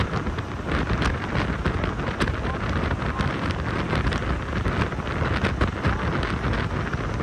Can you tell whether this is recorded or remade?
recorded